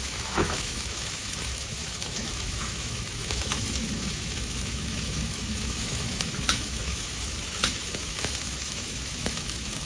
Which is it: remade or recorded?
remade